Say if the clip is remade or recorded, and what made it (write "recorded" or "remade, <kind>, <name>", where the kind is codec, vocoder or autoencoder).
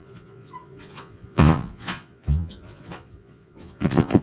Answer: remade, vocoder, Vocos